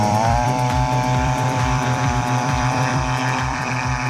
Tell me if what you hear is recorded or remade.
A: remade